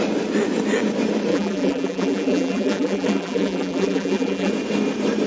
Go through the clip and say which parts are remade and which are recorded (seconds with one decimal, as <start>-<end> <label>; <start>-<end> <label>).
0.0-1.3 recorded; 1.3-4.5 remade; 4.5-5.3 recorded